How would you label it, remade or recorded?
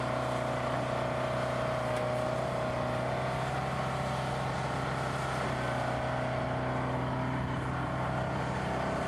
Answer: recorded